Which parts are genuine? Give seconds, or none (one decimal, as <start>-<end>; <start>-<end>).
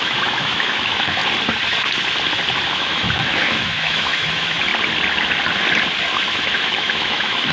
1.2-2.7; 4.7-6.3